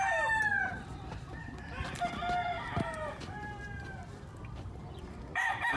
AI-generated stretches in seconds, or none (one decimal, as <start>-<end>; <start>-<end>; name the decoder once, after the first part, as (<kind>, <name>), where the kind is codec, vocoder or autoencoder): 0.0-5.8 (vocoder, BigVGAN v2)